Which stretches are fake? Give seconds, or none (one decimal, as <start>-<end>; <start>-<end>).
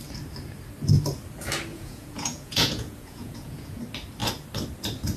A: 1.7-3.8